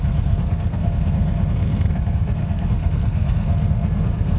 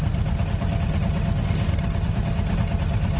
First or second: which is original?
second